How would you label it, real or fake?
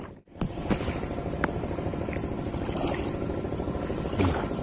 real